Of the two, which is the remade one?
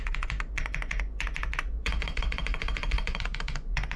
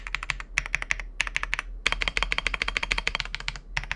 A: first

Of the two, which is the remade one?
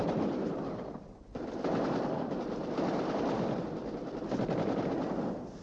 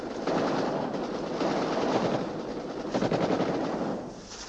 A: first